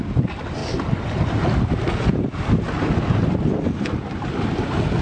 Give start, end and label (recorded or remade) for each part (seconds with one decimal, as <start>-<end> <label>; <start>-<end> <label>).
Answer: 0.0-5.0 recorded